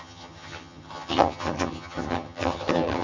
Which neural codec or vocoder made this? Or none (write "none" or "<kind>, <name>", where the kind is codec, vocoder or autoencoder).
vocoder, HiFi-GAN